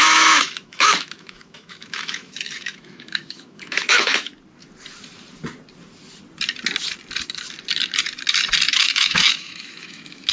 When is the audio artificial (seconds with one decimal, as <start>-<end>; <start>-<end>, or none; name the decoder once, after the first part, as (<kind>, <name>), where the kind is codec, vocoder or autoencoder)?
0.0-4.3 (autoencoder, DAC-VAE); 8.7-10.3

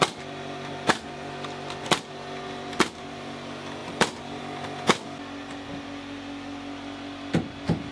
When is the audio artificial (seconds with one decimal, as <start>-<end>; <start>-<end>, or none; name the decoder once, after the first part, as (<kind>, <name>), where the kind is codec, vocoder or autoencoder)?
none